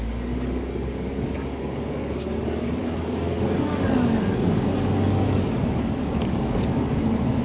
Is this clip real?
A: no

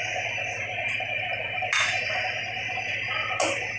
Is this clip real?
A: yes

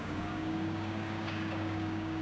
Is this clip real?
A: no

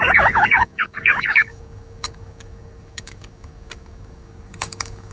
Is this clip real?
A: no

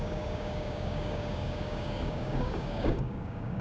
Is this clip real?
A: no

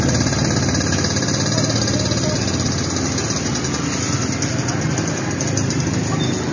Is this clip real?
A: yes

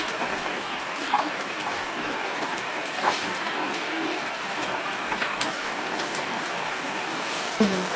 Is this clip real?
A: no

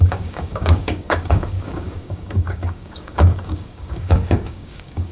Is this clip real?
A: no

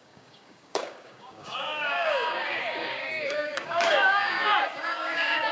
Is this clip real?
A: no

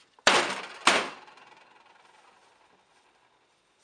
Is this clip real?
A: yes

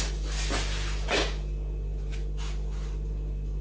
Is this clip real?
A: yes